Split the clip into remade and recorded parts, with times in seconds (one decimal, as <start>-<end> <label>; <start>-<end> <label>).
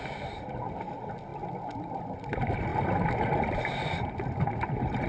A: 0.0-5.1 recorded